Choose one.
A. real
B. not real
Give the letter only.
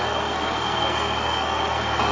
B